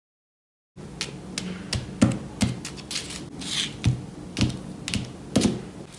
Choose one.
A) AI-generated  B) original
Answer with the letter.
B